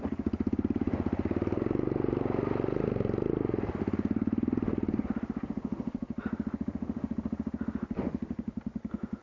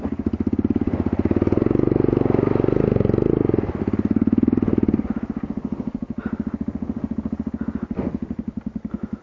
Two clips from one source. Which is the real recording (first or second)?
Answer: second